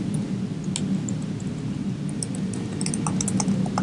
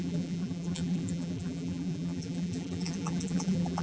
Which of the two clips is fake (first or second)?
second